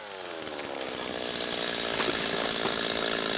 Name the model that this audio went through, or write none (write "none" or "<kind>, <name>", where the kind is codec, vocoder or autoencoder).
none